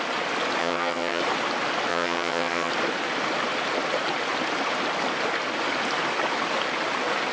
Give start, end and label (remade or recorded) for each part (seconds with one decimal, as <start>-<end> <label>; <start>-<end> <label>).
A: 0.0-0.6 recorded; 0.6-1.2 remade; 1.2-1.9 recorded; 1.9-2.7 remade; 2.7-7.3 recorded